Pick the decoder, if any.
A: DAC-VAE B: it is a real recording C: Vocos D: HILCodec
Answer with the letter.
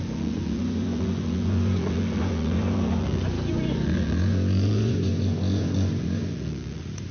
C